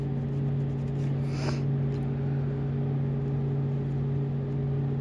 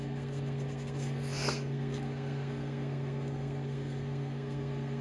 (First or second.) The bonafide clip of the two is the first